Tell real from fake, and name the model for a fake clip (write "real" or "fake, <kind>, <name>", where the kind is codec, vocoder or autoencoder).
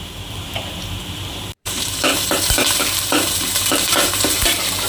fake, vocoder, BigVGAN v2